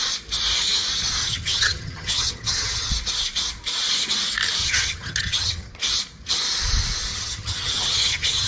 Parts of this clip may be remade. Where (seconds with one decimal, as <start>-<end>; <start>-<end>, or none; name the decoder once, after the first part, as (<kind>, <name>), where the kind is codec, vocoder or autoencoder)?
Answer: 1.2-2.9 (vocoder, HiFi-GAN); 4.6-5.7; 7.1-8.5